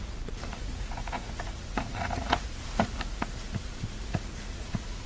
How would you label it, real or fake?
fake